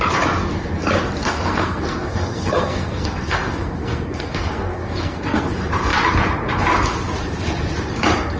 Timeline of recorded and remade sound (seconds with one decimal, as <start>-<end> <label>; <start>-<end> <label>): 0.0-1.2 recorded; 1.2-5.5 remade; 5.5-8.4 recorded